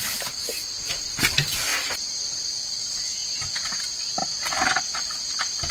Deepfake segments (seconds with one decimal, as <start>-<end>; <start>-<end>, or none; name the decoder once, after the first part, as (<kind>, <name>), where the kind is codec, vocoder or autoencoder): 3.2-3.8 (vocoder, Vocos); 4.2-4.8

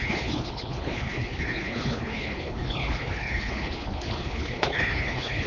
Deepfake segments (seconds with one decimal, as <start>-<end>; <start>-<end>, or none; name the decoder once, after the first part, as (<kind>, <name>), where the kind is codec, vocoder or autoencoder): 0.0-5.5 (codec, HILCodec)

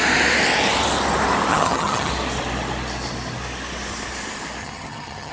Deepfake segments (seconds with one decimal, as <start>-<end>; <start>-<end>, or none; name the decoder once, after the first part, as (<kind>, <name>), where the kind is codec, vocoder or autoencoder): 1.5-2.1 (vocoder, HiFi-GAN); 4.6-5.3

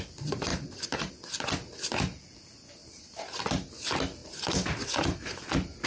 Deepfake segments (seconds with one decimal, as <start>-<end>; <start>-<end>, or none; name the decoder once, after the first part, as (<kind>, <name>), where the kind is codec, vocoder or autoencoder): 0.5-1.1 (vocoder, BigVGAN v2); 2.8-3.7; 4.2-5.4

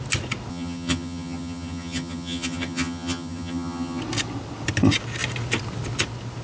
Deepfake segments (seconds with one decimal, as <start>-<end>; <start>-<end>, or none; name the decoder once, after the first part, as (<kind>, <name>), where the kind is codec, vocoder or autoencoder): 0.5-4.0 (vocoder, HiFi-GAN)

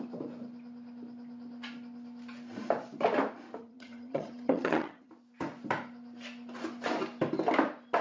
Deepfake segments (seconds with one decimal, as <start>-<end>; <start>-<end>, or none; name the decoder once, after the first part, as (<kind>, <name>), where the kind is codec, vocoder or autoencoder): 3.6-5.1 (vocoder, HiFi-GAN)

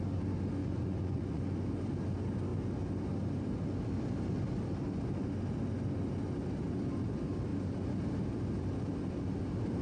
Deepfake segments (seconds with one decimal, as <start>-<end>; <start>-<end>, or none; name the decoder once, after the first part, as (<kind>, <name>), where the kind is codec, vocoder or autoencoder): 0.6-1.4 (vocoder, Vocos)

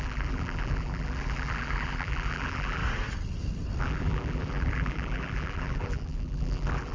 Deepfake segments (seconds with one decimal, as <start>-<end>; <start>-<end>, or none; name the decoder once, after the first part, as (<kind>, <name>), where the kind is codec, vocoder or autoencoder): 0.0-2.8 (vocoder, BigVGAN v2); 3.8-6.9